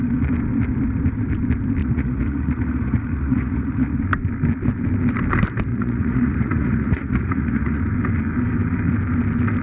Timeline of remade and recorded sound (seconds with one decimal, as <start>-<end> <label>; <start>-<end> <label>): 0.0-1.8 recorded; 1.8-4.0 remade; 4.0-5.7 recorded; 5.7-7.8 remade; 7.8-9.6 recorded